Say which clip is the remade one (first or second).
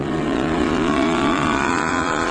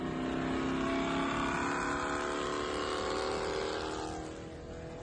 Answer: first